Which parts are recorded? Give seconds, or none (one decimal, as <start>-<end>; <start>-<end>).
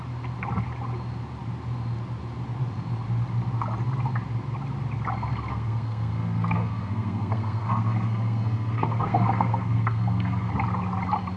0.0-5.5; 10.5-11.4